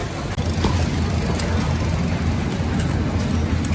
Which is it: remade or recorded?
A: recorded